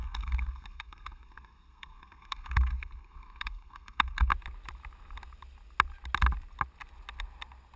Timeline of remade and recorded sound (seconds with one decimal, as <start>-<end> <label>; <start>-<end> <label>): 0.0-4.3 remade; 4.3-7.8 recorded